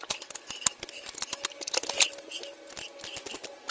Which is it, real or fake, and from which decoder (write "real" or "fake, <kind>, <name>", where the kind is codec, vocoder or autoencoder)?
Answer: real